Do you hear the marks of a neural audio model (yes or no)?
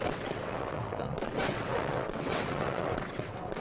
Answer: yes